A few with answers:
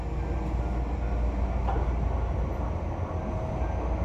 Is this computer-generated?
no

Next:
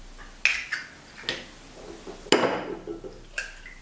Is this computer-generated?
no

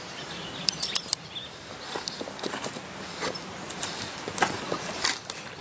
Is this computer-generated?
no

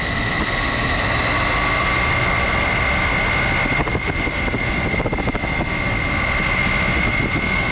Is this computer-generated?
no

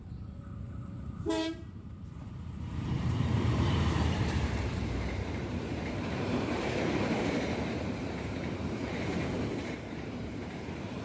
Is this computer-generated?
yes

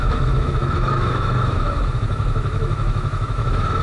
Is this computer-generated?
yes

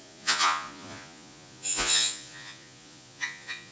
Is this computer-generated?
yes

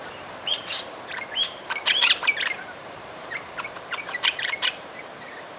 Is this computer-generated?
yes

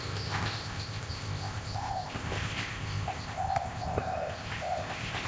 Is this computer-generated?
yes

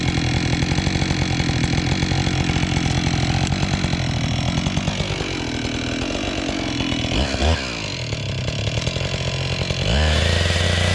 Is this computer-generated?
no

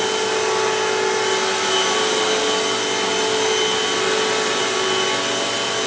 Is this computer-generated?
no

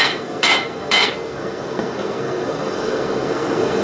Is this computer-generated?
yes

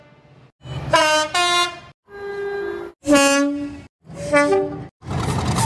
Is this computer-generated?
no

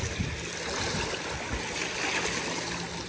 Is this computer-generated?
no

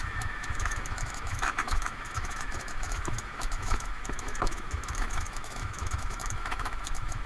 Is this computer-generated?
yes